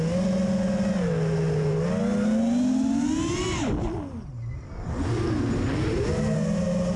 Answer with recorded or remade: recorded